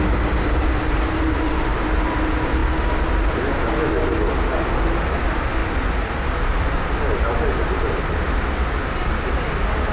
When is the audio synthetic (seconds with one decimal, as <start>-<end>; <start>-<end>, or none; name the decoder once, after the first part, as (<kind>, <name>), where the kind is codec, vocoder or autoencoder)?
2.6-3.1 (vocoder, BigVGAN v2); 5.6-9.3